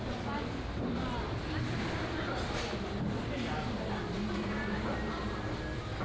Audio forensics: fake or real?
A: real